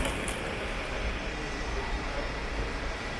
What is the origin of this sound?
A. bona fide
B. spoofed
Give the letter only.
A